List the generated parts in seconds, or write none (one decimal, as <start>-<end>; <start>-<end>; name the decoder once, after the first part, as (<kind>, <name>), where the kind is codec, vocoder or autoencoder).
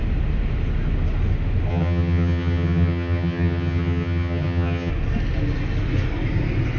1.7-4.9 (vocoder, HiFi-GAN)